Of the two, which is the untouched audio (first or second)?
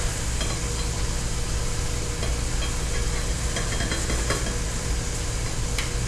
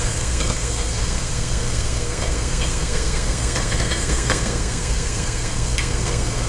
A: first